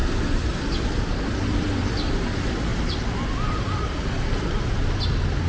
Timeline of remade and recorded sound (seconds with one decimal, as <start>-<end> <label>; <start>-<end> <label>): 0.0-2.1 remade; 2.1-5.5 recorded